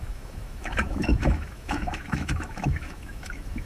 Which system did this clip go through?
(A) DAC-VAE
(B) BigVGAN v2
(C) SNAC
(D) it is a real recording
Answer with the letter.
A